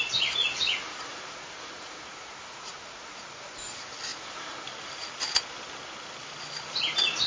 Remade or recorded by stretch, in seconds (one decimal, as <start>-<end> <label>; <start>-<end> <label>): 0.0-0.9 recorded; 0.9-3.2 remade; 3.2-7.3 recorded